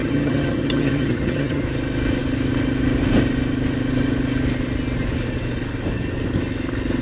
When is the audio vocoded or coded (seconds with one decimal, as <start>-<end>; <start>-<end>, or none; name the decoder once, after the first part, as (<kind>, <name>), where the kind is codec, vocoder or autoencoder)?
0.0-1.6 (vocoder, HiFi-GAN)